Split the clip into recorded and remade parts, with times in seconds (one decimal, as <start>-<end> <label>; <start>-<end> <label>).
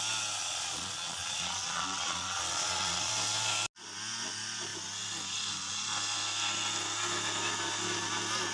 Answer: 0.0-0.4 recorded; 0.4-3.1 remade; 3.1-8.5 recorded